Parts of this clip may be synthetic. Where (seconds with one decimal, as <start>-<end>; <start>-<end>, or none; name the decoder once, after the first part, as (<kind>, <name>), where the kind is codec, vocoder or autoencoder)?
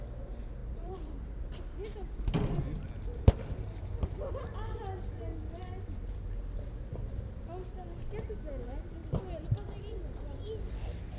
0.6-1.6 (vocoder, BigVGAN v2); 3.1-4.5